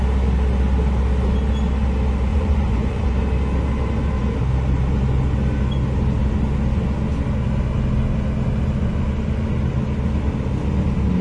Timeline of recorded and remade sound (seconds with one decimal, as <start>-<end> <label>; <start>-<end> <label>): 0.0-2.3 recorded; 2.3-3.1 remade; 3.1-11.2 recorded